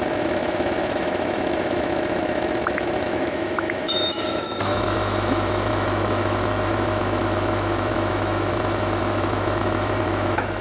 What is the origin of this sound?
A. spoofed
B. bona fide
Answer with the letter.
A